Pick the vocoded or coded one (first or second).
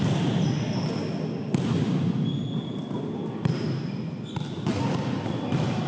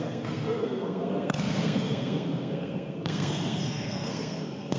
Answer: second